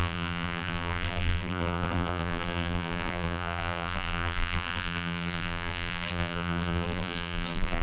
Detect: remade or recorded remade